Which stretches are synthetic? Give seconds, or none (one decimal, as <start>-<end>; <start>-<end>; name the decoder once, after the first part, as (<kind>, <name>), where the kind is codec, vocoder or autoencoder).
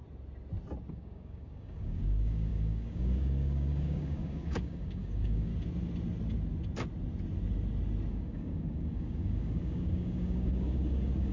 0.9-5.5 (codec, DAC); 8.1-11.3